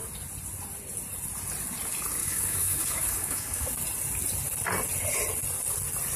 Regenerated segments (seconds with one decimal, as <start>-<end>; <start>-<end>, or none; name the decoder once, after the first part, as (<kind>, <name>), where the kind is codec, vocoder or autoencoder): 2.2-3.7 (autoencoder, DAC-VAE)